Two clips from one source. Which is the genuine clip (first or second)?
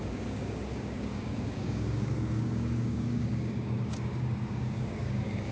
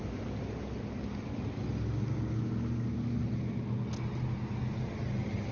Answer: second